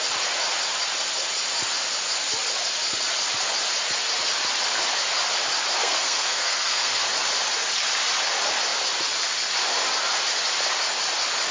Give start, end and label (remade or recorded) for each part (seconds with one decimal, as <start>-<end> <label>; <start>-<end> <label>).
0.0-5.8 recorded; 5.8-6.9 remade; 6.9-11.5 recorded